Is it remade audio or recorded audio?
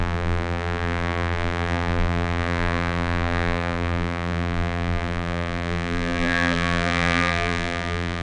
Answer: remade